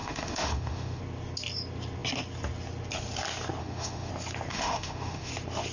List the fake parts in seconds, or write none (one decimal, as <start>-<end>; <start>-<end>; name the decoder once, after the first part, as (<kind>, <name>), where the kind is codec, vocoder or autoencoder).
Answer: 0.0-1.0 (autoencoder, DAC-VAE); 3.6-4.1; 4.5-5.3